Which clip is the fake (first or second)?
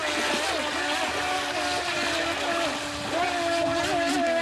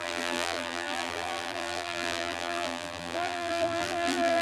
second